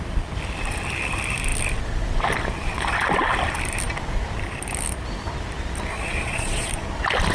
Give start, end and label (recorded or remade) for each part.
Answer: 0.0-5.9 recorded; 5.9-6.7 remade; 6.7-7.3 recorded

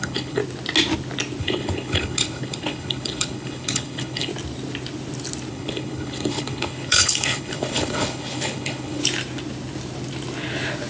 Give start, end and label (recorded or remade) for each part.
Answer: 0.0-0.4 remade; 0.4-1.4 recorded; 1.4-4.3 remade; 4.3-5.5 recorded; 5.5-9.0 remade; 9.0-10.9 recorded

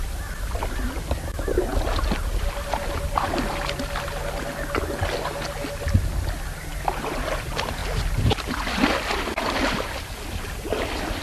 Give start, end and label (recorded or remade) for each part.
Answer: 0.0-11.2 recorded

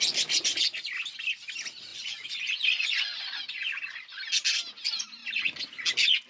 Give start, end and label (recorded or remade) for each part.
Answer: 0.0-1.9 recorded; 1.9-3.8 remade; 3.8-6.3 recorded